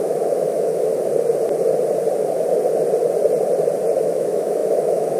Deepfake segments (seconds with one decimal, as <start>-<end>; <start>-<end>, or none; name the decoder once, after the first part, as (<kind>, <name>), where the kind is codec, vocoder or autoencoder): 0.0-0.9 (autoencoder, DAC-VAE); 4.0-5.2